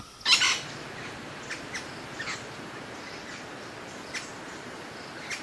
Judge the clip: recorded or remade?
recorded